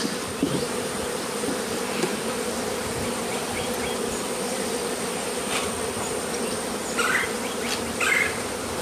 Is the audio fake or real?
fake